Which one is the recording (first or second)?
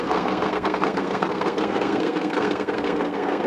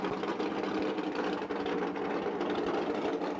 second